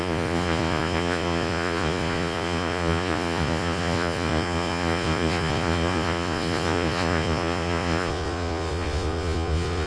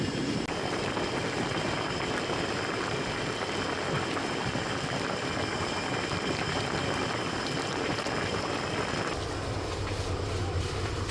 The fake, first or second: first